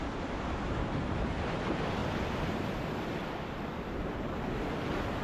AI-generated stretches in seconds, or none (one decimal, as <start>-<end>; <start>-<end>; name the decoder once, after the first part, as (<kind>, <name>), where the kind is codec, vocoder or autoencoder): 0.0-2.0 (vocoder, BigVGAN v2)